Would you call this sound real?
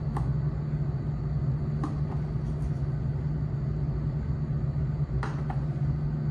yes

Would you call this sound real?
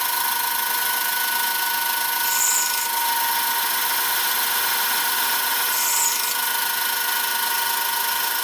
yes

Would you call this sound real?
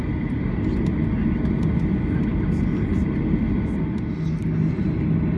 yes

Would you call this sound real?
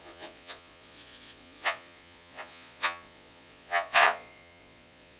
no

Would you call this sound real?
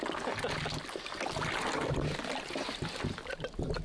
yes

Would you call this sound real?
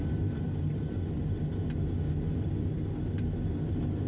yes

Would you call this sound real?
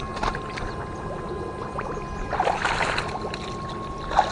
yes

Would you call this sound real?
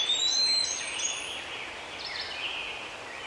yes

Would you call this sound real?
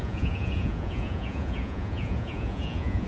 no